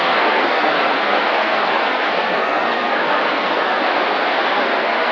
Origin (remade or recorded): remade